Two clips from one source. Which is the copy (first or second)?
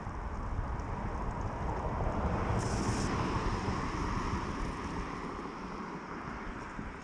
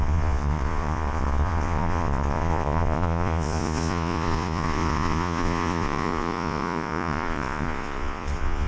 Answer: second